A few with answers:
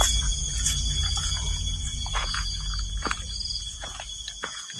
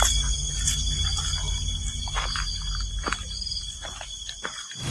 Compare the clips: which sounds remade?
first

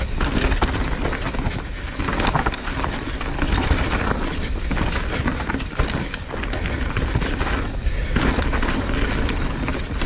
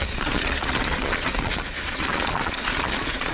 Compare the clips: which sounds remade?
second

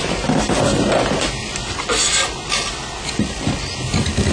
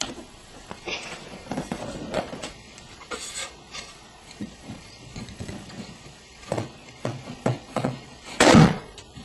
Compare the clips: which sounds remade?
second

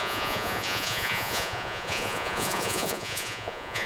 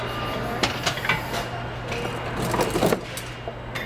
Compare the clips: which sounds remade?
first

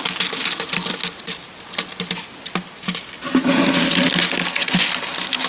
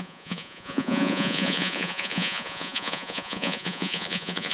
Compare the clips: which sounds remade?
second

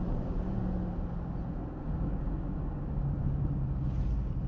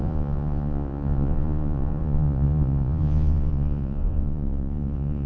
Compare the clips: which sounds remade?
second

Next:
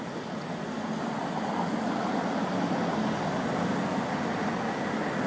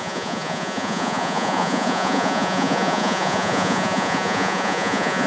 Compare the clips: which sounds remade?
second